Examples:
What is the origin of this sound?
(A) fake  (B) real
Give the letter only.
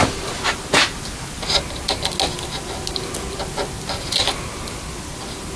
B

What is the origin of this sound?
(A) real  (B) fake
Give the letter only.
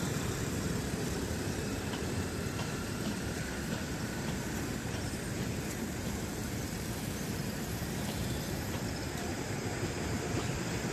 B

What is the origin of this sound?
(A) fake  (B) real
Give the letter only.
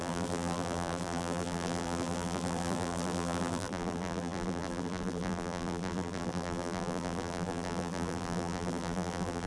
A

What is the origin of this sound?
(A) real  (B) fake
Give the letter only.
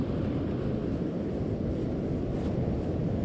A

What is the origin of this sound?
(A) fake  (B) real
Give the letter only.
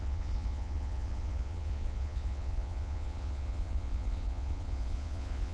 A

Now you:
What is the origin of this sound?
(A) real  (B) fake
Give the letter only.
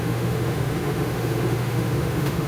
B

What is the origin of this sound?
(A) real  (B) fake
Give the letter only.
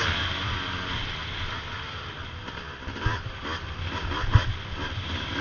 A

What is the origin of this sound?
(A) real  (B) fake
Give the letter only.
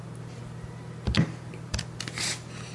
A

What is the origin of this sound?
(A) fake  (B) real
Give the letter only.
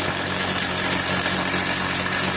B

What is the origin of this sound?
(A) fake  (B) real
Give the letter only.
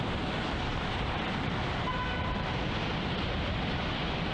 A